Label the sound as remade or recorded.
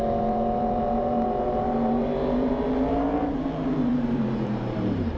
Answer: remade